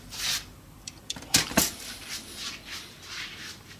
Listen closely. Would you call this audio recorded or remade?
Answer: remade